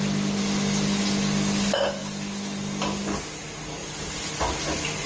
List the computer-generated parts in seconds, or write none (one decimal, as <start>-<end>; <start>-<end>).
3.8-4.6